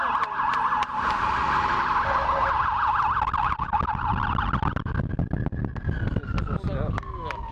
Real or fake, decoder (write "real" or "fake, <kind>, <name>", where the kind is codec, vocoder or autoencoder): real